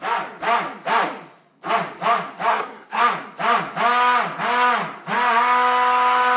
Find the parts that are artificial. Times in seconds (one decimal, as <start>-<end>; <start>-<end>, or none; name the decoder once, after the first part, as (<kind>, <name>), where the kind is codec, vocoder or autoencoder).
2.5-3.0 (codec, SNAC)